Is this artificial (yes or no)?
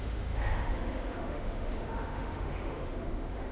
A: yes